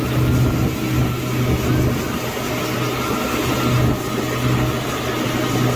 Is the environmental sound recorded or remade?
recorded